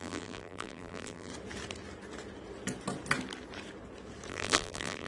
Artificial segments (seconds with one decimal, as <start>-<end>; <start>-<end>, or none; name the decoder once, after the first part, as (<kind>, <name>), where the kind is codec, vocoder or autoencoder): 0.0-1.3 (vocoder, BigVGAN v2); 4.3-5.1